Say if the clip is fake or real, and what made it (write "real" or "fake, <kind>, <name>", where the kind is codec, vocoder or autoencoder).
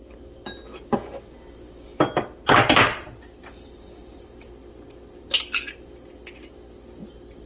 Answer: real